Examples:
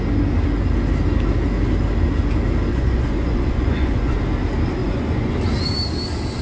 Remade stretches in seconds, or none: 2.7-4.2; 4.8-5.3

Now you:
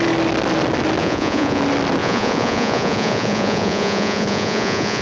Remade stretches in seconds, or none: 1.0-1.6; 2.0-5.0

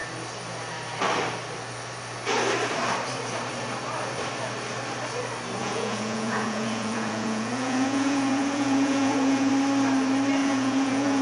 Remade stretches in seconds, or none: 5.6-9.5; 10.4-11.2